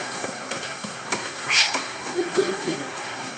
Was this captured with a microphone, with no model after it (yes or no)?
no